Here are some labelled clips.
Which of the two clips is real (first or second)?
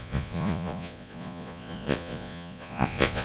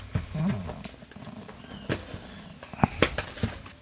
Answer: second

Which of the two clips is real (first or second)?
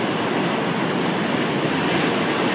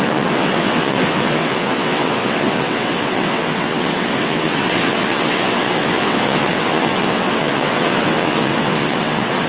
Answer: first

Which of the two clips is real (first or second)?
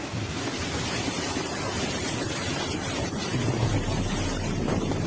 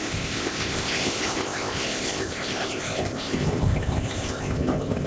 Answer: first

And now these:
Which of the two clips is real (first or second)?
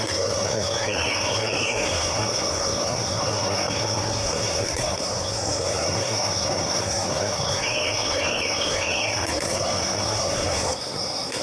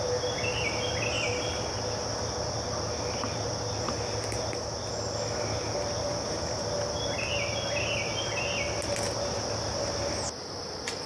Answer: second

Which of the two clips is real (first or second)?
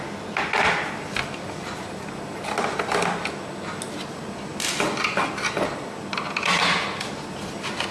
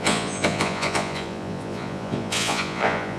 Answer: first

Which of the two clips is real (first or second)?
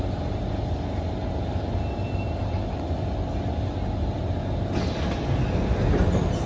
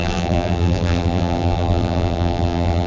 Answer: first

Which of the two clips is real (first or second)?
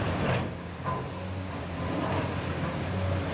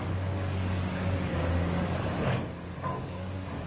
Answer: first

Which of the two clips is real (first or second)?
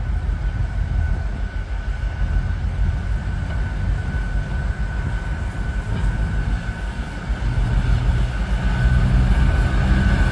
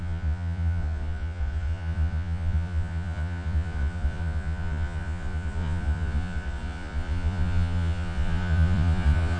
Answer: first